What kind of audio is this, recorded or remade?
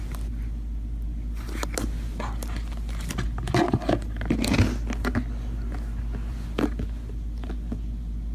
recorded